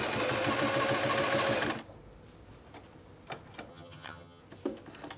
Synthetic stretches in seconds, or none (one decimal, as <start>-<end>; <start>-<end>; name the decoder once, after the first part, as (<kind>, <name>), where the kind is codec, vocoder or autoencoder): 3.7-4.4 (vocoder, HiFi-GAN)